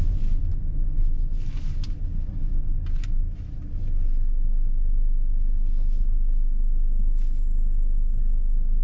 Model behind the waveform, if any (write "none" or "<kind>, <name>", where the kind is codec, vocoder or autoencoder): none